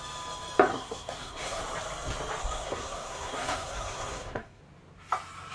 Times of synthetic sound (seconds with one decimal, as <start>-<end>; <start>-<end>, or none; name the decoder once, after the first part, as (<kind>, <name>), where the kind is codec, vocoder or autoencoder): 0.7-1.6 (codec, SNAC); 2.4-4.6